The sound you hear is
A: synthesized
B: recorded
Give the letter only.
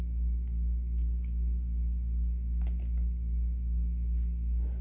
B